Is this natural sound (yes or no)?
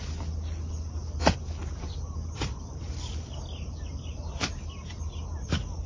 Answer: yes